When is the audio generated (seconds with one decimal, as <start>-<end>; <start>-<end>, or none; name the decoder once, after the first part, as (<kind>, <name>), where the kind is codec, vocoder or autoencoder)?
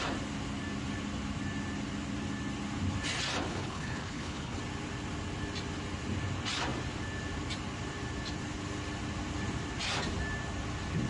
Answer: 3.5-4.6 (codec, HILCodec)